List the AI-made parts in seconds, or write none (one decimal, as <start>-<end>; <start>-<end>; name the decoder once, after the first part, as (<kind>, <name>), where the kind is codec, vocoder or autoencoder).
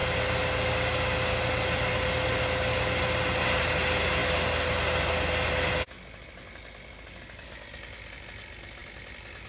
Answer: none